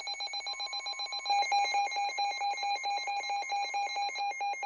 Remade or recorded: recorded